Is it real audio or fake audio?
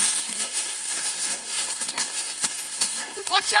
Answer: fake